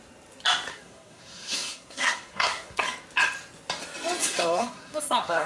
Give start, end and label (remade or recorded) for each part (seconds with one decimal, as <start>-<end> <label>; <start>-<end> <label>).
0.0-0.7 recorded; 0.7-2.8 remade; 2.8-4.2 recorded; 4.2-5.5 remade